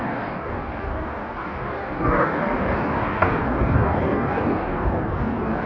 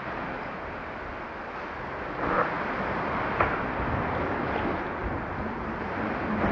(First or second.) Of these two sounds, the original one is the second